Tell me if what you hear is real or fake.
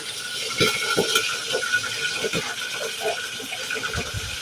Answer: real